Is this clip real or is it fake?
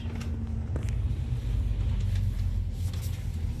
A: real